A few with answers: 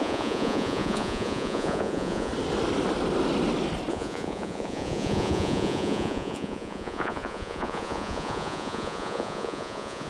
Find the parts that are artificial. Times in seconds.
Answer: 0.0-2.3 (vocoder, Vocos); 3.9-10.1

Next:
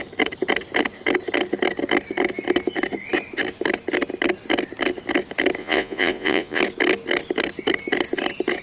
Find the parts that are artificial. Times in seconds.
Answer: 5.6-6.6 (vocoder, Vocos)

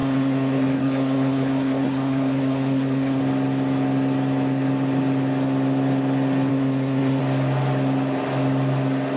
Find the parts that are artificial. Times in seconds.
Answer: 0.0-3.2 (codec, SNAC); 6.5-7.2

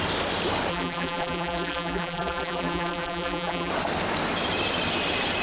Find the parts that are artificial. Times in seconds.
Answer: 0.7-3.7 (vocoder, BigVGAN v2)

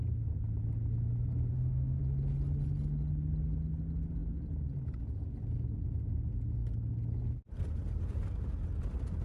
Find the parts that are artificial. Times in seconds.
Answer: 1.5-2.0 (autoencoder, DAC-VAE)

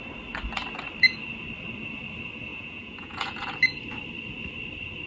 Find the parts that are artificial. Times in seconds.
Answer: 2.5-3.6 (vocoder, Vocos)

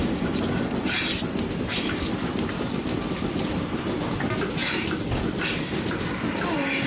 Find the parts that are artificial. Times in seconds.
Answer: none

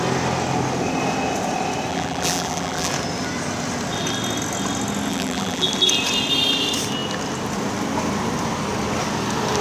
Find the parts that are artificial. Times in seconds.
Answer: 1.9-2.9 (vocoder, BigVGAN v2); 5.1-5.7